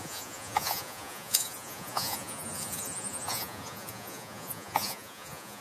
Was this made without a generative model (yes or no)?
no